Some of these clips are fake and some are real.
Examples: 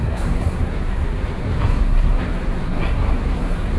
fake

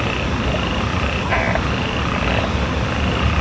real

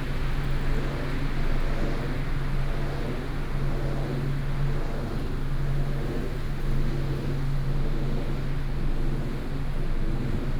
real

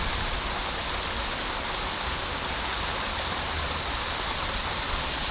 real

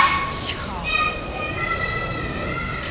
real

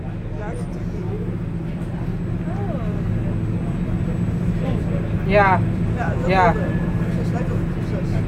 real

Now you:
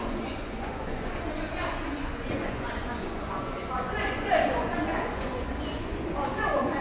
fake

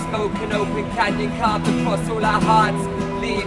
fake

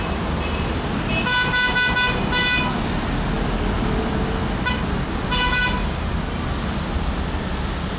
real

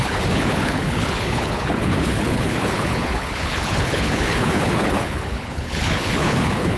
fake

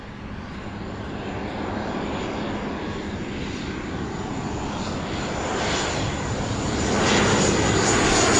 real